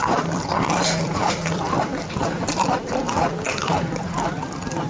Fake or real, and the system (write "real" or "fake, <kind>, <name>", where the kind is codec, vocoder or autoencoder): fake, vocoder, BigVGAN v2